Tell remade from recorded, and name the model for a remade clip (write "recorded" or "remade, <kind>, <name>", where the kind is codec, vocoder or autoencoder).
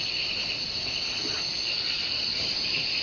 recorded